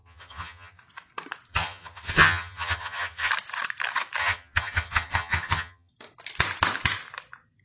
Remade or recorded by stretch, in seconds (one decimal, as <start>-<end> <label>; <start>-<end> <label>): 0.0-0.8 remade; 0.8-1.5 recorded; 1.5-3.3 remade; 3.3-4.2 recorded; 4.2-5.9 remade; 5.9-7.6 recorded